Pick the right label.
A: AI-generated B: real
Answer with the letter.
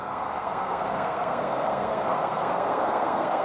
A